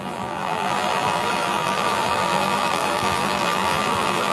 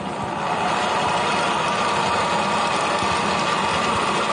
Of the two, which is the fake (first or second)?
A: first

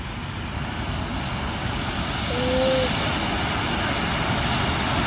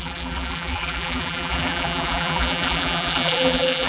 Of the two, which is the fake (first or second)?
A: second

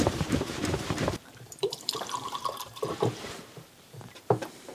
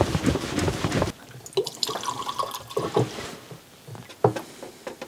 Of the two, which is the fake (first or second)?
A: first